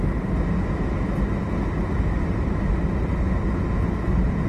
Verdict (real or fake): real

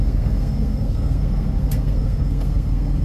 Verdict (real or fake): fake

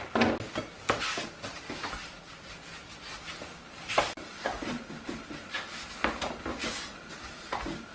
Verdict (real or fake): real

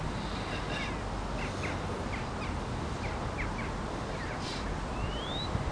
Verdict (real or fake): real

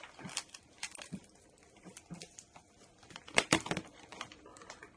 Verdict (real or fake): fake